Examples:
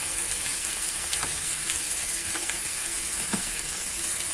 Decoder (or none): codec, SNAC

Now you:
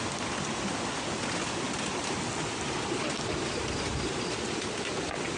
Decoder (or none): none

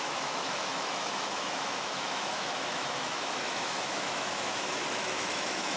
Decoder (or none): autoencoder, DAC-VAE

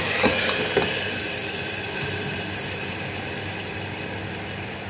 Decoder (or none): none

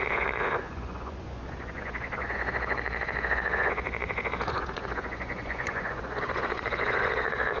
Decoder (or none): vocoder, Vocos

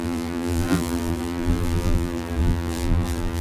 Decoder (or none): vocoder, BigVGAN v2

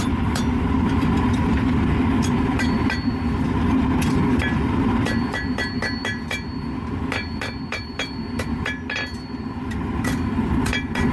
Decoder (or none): vocoder, BigVGAN v2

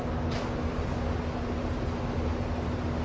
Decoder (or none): none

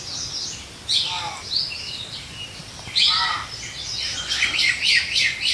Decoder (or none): vocoder, BigVGAN v2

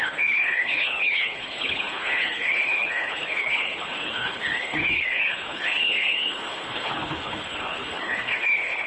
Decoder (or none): codec, HILCodec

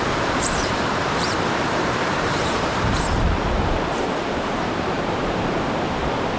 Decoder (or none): vocoder, BigVGAN v2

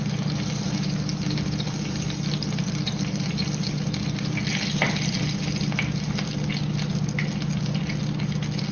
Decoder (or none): none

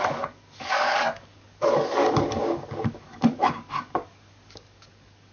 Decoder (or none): codec, DAC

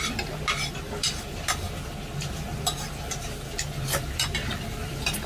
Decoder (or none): none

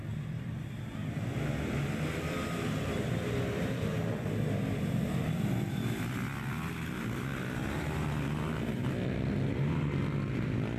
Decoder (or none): none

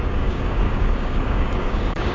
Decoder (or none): codec, DAC